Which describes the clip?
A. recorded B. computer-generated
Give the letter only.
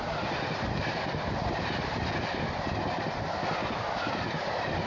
A